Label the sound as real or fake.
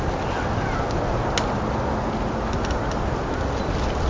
real